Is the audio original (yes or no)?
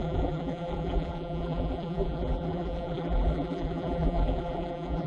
no